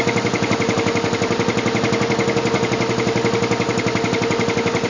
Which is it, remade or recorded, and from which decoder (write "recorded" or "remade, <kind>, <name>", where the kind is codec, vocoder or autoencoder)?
recorded